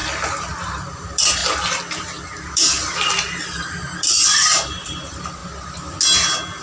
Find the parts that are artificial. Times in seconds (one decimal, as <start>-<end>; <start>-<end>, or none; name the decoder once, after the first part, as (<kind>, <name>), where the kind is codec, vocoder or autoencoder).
0.9-1.4 (vocoder, BigVGAN v2); 2.5-5.4